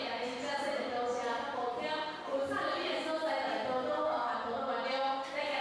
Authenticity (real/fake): real